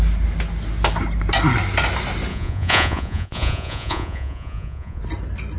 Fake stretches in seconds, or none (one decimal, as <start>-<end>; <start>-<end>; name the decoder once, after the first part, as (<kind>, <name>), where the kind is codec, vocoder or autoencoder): 2.3-5.0 (vocoder, Vocos)